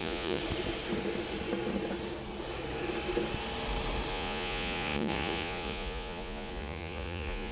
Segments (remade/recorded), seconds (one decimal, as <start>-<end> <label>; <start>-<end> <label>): 0.0-0.4 remade; 0.4-4.1 recorded; 4.1-7.5 remade